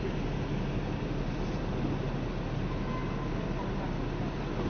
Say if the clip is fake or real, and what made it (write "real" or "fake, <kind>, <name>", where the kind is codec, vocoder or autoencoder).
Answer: real